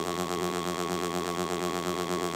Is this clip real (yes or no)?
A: no